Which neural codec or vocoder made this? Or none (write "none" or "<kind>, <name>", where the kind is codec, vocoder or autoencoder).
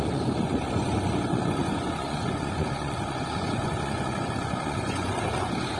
vocoder, Vocos